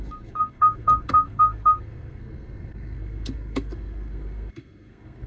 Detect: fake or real fake